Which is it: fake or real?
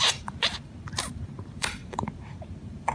fake